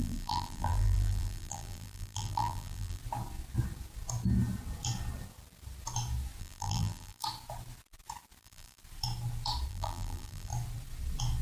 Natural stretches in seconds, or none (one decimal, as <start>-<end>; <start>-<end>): 3.0-6.4; 7.2-8.4; 8.8-9.7; 10.5-11.4